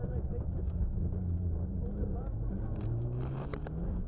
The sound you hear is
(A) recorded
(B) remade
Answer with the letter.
A